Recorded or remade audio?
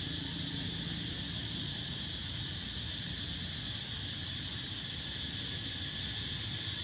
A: recorded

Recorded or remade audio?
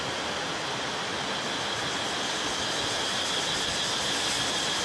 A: recorded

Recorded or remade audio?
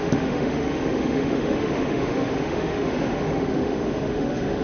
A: remade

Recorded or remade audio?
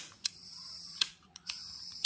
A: remade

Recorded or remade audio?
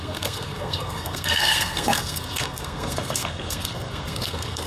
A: remade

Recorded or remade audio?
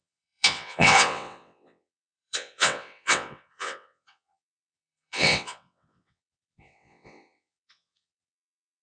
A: remade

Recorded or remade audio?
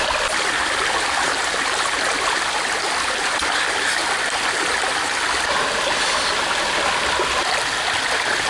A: recorded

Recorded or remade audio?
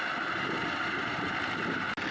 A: recorded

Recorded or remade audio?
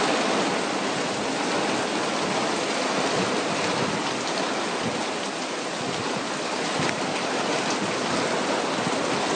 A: recorded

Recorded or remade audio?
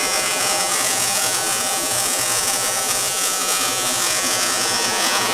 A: remade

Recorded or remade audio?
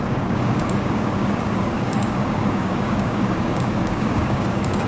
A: remade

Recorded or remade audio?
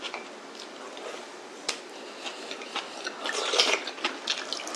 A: recorded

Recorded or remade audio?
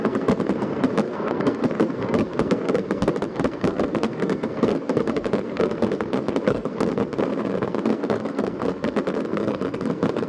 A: remade